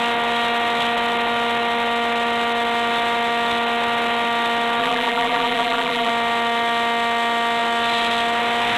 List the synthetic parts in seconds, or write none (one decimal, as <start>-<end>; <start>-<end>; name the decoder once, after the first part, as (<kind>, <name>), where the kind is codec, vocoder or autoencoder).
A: 4.8-6.1 (vocoder, BigVGAN v2)